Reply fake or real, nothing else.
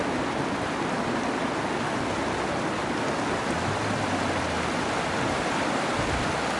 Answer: real